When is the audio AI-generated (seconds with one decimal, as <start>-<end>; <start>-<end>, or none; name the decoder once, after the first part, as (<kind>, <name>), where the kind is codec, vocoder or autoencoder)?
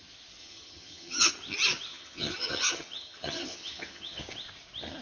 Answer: 0.4-1.3 (vocoder, HiFi-GAN); 1.9-4.2